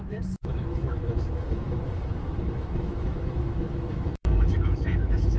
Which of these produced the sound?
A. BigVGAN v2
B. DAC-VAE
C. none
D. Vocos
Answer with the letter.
B